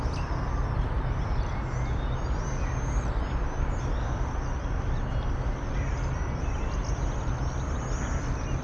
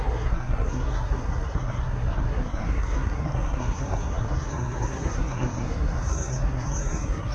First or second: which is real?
first